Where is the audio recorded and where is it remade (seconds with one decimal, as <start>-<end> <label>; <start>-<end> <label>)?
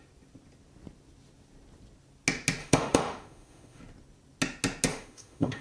0.0-2.6 recorded; 2.6-3.8 remade; 3.8-4.9 recorded; 4.9-5.6 remade